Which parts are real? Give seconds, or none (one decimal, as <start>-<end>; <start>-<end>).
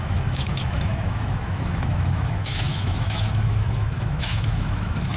none